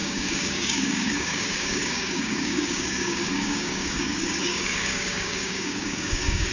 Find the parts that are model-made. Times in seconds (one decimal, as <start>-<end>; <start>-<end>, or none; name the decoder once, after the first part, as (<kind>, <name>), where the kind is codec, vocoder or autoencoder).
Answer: 0.0-6.5 (codec, DAC)